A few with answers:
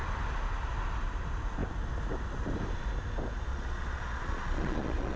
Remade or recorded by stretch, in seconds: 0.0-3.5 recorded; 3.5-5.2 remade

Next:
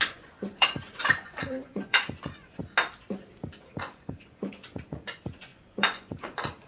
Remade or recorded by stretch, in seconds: 0.0-2.6 remade; 2.6-3.8 recorded; 3.8-6.7 remade

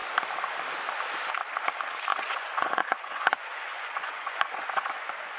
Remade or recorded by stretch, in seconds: 0.0-2.1 recorded; 2.1-5.4 remade

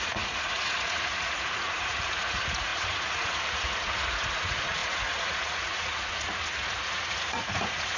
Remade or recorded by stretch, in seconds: 0.0-8.0 remade

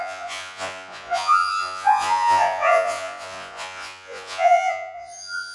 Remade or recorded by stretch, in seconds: 0.0-5.5 remade

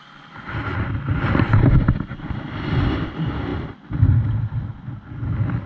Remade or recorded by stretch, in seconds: 0.0-5.7 recorded

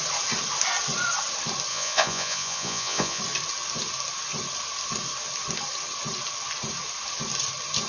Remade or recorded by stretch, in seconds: 0.0-1.7 recorded; 1.7-3.2 remade; 3.2-7.9 recorded

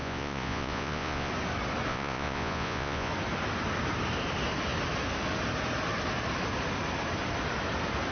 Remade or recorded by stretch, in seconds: 0.0-1.3 remade; 1.3-1.9 recorded; 1.9-3.1 remade; 3.1-8.1 recorded